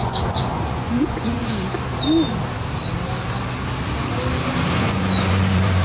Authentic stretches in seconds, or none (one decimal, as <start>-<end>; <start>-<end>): 1.4-4.8